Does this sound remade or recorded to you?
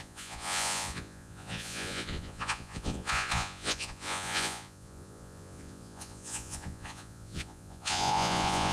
remade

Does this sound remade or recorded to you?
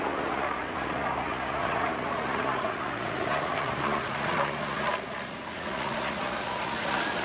remade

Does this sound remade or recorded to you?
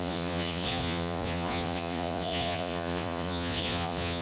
remade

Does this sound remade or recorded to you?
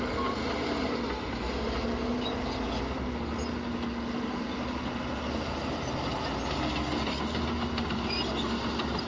recorded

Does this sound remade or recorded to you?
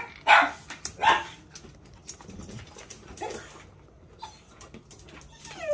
recorded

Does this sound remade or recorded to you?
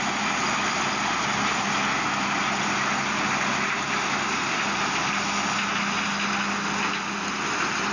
recorded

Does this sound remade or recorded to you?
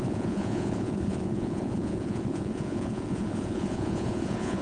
remade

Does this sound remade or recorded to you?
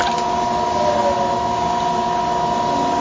recorded